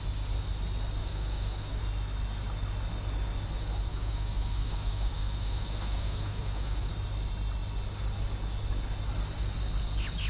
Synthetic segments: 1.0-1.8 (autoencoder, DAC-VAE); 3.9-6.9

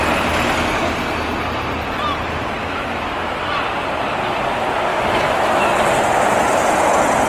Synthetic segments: 2.6-3.4 (autoencoder, DAC-VAE); 4.9-5.7

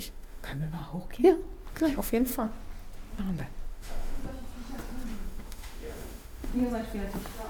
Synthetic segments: 0.0-0.8 (autoencoder, DAC-VAE); 1.7-2.3; 3.7-4.2; 5.1-6.5

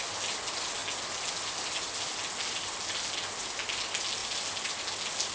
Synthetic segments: none

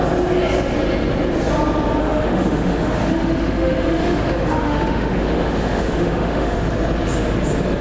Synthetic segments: 2.0-6.7 (autoencoder, DAC-VAE)

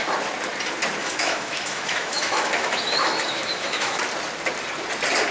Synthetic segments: 1.0-4.0 (autoencoder, DAC-VAE)

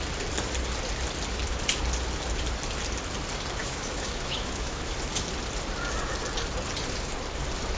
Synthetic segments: 3.6-4.9 (autoencoder, DAC-VAE)